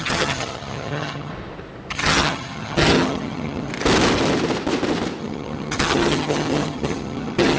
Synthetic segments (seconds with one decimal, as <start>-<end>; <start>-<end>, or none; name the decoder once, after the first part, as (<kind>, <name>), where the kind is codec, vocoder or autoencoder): 0.0-1.3 (vocoder, HiFi-GAN); 1.9-3.7; 5.2-7.6